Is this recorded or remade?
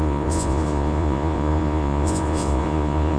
remade